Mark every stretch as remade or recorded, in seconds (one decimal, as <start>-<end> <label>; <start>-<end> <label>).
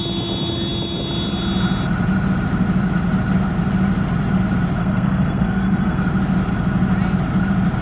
0.0-4.8 recorded; 4.8-6.0 remade; 6.0-7.8 recorded